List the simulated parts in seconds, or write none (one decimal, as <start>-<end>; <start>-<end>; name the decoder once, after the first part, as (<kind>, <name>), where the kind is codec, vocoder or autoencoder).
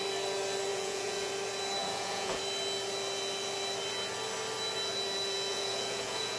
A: 0.7-1.3 (vocoder, Vocos); 1.8-2.4; 5.5-6.4